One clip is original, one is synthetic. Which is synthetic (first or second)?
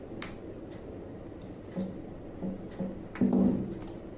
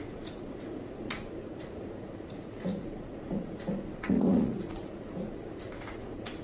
second